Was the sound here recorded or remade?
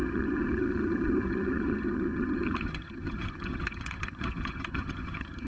remade